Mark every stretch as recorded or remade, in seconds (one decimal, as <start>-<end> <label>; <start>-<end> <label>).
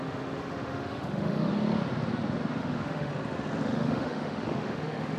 0.0-1.5 remade; 1.5-2.6 recorded; 2.6-3.1 remade; 3.1-3.6 recorded; 3.6-5.2 remade